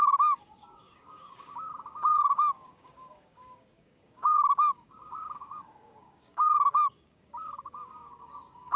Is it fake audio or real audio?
fake